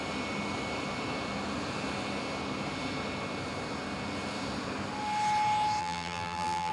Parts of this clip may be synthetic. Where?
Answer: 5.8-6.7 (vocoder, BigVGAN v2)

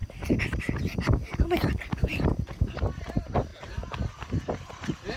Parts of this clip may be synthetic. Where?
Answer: 0.0-3.5 (vocoder, BigVGAN v2)

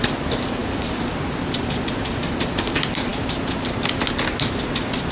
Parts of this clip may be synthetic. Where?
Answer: 0.6-1.6 (vocoder, BigVGAN v2)